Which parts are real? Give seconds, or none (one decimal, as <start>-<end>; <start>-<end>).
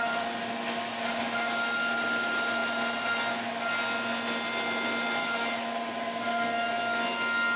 0.0-5.2; 5.8-7.6